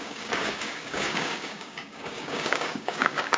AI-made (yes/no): yes